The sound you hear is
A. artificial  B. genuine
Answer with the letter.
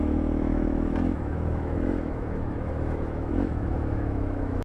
A